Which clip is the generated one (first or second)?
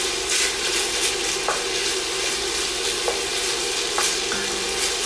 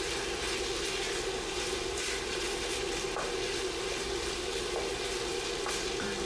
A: second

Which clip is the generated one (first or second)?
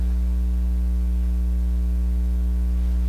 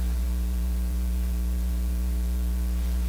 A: second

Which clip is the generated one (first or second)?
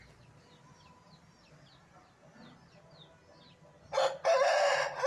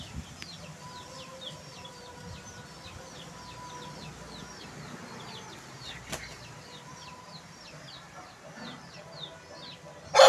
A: second